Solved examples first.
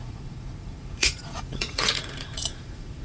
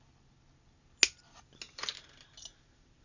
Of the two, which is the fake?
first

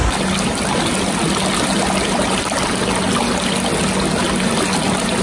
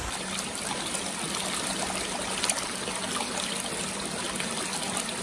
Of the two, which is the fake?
second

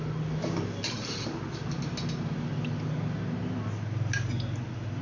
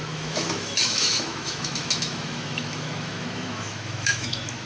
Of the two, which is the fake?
second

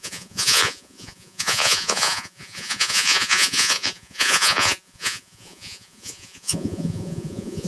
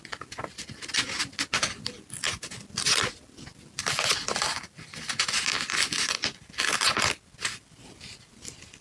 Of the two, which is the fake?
first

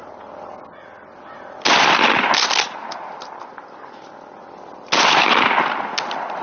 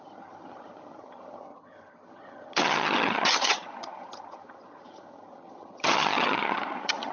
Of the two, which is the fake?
second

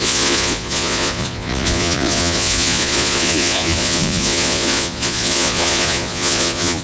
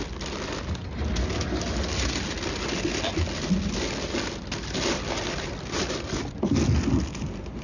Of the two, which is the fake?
first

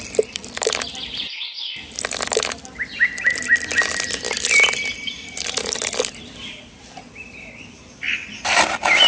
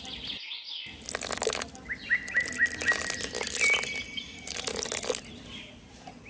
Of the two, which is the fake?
first